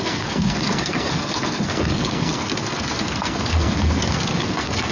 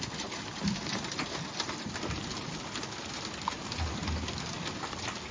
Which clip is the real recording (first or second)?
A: second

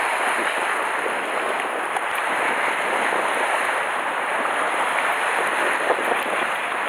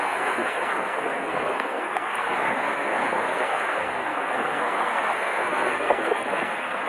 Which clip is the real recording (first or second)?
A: first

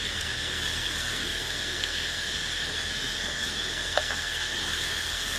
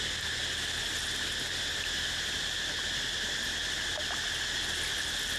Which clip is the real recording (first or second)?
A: second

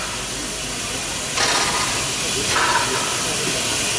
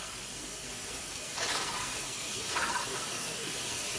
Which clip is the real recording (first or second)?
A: first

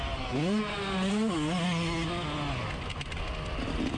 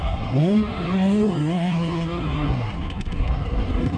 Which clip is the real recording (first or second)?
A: first